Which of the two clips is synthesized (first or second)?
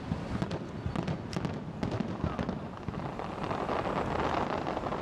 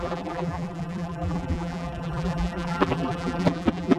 second